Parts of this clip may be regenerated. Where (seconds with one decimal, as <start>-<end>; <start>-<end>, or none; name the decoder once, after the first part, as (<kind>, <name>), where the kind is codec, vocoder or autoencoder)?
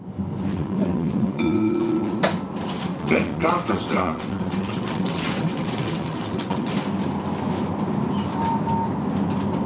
0.5-2.2 (vocoder, WaveNeXt); 2.9-6.7